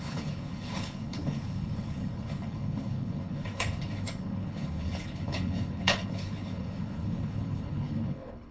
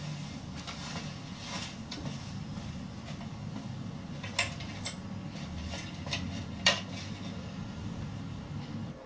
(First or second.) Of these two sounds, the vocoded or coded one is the first